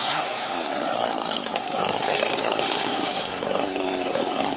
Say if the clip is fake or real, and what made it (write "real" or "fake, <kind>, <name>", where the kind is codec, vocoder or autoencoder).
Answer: fake, codec, SNAC